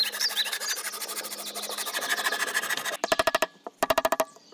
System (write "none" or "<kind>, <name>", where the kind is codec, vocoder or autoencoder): none